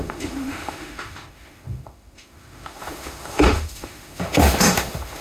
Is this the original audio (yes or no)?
no